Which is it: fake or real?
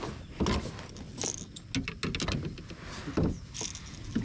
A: real